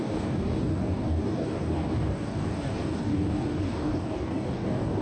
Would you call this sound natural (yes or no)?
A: no